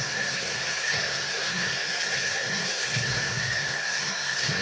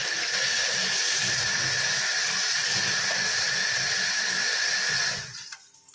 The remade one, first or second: first